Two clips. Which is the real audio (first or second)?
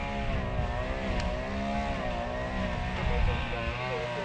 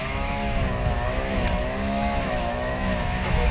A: first